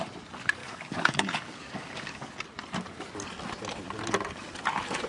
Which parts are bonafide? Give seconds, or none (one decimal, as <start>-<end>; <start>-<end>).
0.0-0.6; 2.3-5.1